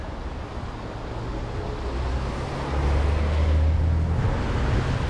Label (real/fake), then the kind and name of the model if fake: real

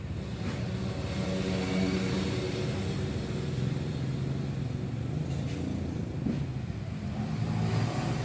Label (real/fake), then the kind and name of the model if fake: real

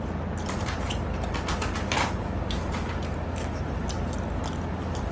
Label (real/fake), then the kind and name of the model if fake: real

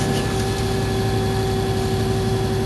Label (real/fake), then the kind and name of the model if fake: real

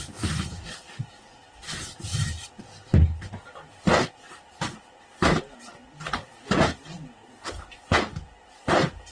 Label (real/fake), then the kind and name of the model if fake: real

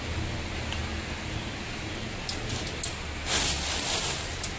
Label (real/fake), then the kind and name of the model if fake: real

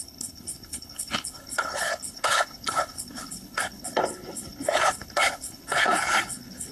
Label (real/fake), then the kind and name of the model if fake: fake, codec, HILCodec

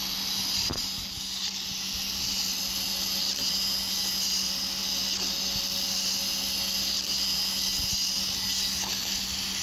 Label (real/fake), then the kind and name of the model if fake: real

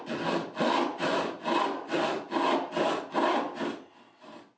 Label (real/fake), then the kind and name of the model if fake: real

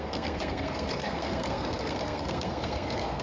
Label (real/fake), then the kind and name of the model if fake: fake, codec, SNAC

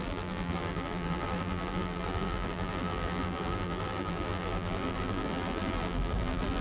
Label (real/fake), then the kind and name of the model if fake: fake, vocoder, BigVGAN v2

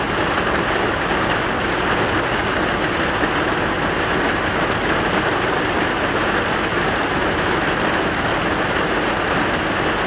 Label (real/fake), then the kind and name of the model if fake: real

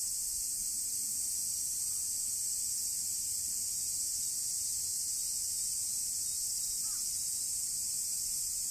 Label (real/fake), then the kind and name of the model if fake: real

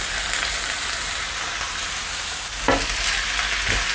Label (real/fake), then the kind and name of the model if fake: real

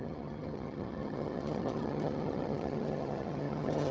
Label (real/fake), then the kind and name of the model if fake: fake, vocoder, HiFi-GAN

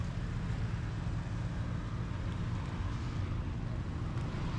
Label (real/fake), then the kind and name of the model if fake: real